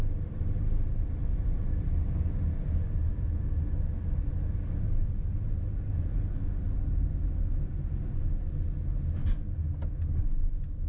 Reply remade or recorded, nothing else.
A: recorded